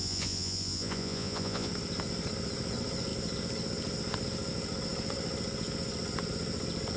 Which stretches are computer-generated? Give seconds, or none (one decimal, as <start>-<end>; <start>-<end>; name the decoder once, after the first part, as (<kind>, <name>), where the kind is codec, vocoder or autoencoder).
0.0-1.7 (vocoder, Vocos)